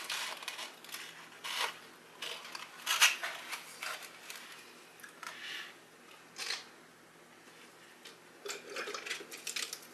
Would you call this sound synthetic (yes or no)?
no